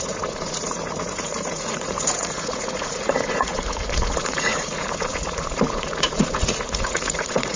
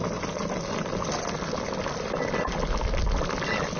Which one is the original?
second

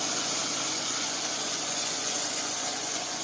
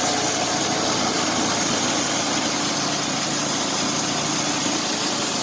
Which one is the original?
second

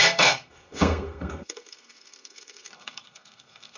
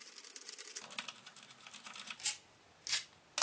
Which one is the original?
second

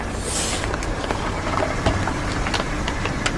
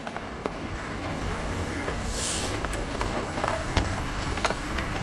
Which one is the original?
first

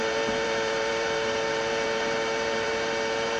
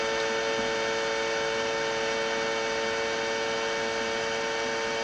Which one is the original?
second